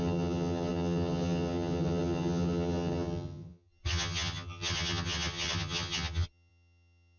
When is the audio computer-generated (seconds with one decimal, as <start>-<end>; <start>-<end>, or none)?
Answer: 0.0-7.2